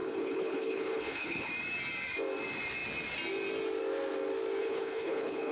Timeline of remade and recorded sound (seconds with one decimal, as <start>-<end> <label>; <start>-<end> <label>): 0.0-1.5 remade; 1.5-4.6 recorded; 4.6-5.5 remade